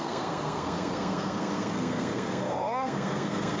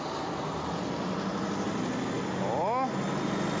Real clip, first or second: second